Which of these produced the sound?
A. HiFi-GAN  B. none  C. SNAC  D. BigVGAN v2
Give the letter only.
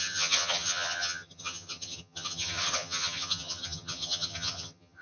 A